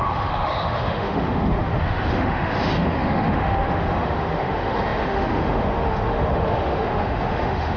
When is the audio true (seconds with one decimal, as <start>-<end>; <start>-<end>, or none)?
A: none